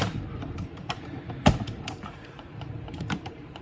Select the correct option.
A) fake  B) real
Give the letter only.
A